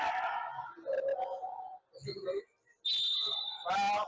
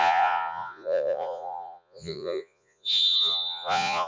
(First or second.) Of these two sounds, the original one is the first